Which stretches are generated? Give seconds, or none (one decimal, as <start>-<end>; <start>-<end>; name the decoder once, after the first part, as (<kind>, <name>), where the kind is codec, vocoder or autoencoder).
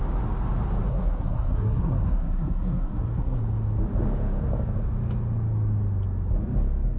0.9-3.4 (codec, SNAC)